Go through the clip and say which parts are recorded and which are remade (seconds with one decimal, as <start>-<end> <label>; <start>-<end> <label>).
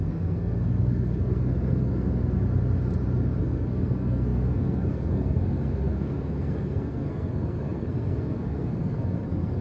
0.0-2.4 remade; 2.4-3.4 recorded; 3.4-9.6 remade